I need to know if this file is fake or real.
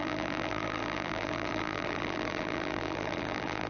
fake